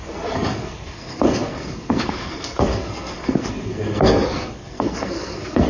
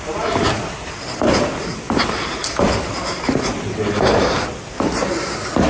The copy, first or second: first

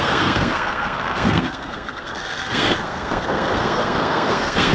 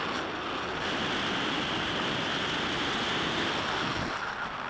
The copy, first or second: first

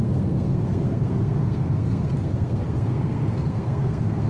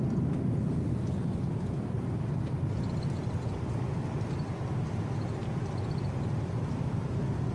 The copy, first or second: first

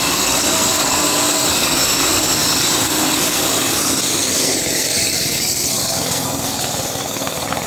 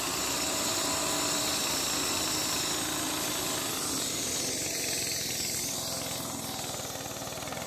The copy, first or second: first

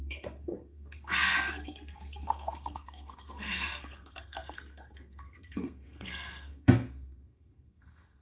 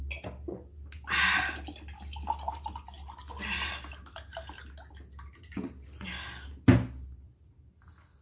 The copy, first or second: first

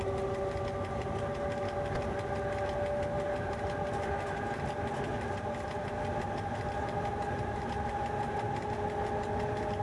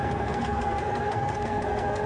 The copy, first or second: second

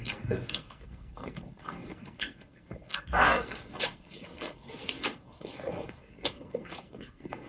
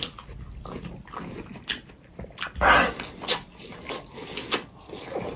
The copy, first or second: first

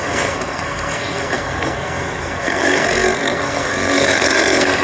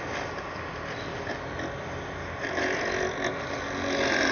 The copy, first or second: first